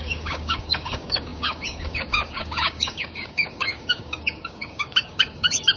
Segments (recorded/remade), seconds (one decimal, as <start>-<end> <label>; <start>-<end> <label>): 0.0-5.8 remade